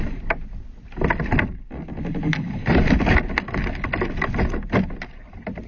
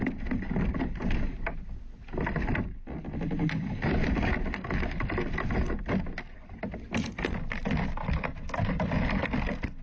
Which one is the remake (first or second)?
first